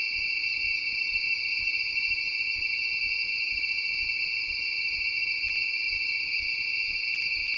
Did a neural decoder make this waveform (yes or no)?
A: yes